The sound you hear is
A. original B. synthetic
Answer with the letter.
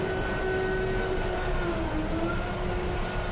A